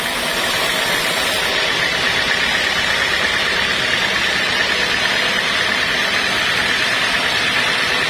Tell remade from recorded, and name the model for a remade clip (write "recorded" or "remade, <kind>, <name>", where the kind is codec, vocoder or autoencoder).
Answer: recorded